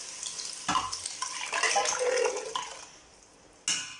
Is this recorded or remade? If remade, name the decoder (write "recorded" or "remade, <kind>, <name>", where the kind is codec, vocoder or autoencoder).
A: recorded